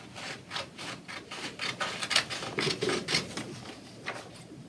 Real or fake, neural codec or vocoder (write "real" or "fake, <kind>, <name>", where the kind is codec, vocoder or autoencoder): real